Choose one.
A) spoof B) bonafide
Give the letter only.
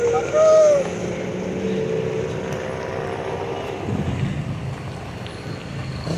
B